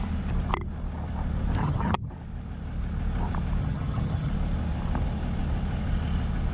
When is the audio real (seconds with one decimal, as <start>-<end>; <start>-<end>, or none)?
0.0-1.6; 2.1-3.6; 4.3-6.5